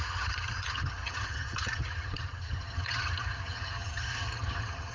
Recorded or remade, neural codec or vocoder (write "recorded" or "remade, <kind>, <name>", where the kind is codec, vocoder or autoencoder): remade, vocoder, HiFi-GAN